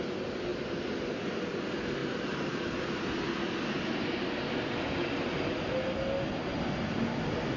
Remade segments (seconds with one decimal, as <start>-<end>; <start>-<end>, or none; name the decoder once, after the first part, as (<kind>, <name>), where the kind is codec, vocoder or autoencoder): none